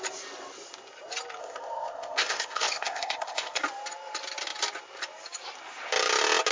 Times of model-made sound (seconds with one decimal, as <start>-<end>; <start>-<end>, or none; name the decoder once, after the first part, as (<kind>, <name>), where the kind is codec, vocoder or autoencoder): 1.4-3.6 (codec, ZipCodec)